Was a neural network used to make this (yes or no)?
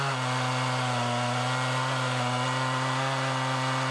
no